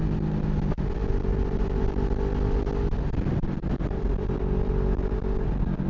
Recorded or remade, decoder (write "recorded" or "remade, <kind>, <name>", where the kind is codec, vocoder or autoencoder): recorded